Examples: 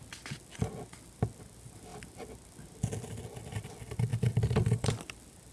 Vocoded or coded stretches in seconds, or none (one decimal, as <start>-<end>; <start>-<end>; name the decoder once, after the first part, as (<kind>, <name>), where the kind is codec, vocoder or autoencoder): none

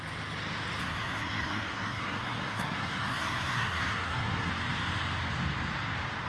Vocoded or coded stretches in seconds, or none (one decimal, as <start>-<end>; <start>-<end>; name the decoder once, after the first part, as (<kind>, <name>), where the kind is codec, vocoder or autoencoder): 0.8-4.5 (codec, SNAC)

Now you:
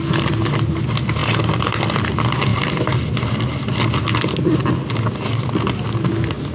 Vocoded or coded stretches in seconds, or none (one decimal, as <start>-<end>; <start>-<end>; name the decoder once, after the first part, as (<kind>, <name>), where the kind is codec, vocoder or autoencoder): none